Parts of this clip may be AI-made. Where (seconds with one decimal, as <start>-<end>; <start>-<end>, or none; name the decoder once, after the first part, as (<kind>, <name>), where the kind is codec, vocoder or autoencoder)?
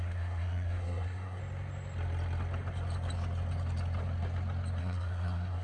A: 0.0-1.4 (codec, SNAC); 4.8-5.6